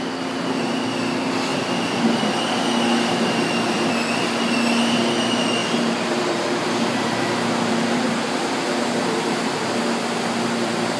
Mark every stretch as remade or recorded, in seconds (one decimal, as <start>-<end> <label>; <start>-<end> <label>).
0.0-5.6 recorded; 5.6-9.7 remade; 9.7-11.0 recorded